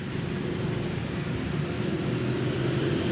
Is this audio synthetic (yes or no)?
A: no